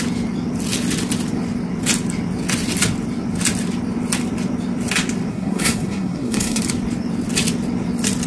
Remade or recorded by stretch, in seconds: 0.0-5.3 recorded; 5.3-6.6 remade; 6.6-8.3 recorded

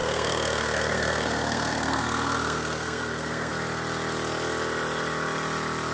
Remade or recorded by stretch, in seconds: 0.0-3.5 remade; 3.5-5.9 recorded

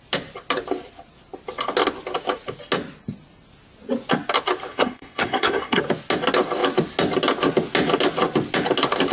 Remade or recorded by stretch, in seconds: 0.0-4.7 recorded; 4.7-5.8 remade; 5.8-9.1 recorded

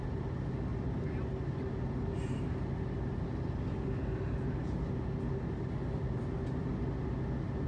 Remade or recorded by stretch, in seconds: 0.0-7.7 recorded